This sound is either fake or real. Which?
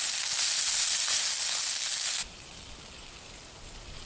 real